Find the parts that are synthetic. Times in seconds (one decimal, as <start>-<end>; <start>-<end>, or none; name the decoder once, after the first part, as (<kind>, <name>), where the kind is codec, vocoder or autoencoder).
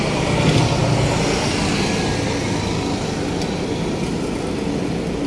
none